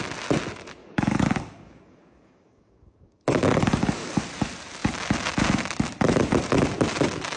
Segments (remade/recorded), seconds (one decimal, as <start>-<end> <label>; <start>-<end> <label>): 0.0-0.8 recorded; 0.8-4.2 remade; 4.2-7.4 recorded